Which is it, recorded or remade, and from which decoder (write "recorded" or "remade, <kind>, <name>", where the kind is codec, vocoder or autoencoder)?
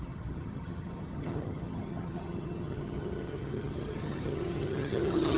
remade, vocoder, HiFi-GAN